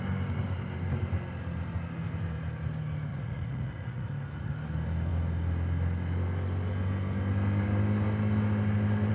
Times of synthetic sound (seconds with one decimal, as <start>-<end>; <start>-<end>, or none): 3.1-4.1